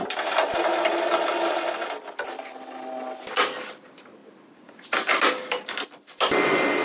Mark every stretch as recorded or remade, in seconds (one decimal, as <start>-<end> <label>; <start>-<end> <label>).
0.0-6.8 recorded